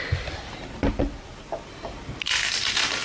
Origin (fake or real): real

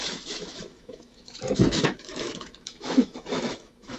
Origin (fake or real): fake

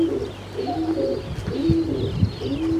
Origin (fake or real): real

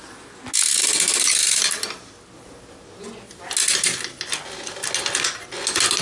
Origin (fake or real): real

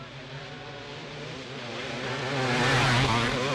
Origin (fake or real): real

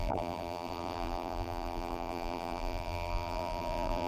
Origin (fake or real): fake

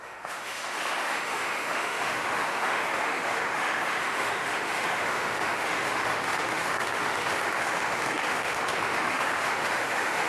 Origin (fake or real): fake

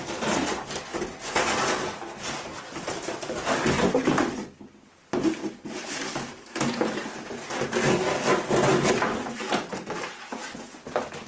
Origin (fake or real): real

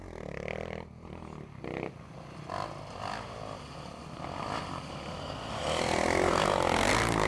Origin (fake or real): real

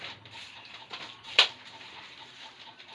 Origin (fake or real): fake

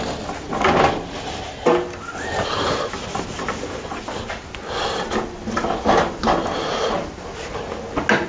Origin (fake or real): real